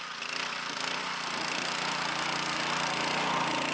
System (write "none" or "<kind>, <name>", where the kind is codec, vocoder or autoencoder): none